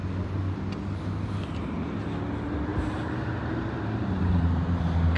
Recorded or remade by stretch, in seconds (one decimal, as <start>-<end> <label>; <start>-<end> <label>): 0.0-2.7 recorded; 2.7-4.8 remade; 4.8-5.2 recorded